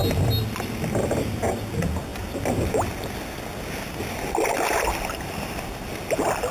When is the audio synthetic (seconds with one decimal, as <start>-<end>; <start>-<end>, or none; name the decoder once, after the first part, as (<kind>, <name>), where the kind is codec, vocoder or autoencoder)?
none